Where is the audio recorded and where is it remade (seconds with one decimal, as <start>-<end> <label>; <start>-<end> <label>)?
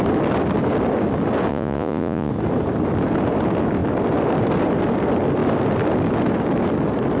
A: 0.0-1.5 recorded; 1.5-2.3 remade; 2.3-7.2 recorded